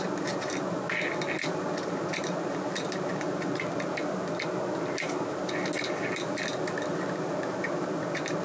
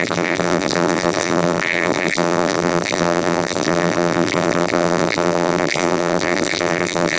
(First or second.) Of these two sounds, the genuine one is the first